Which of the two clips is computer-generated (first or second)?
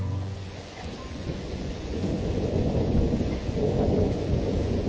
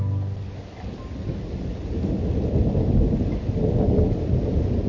first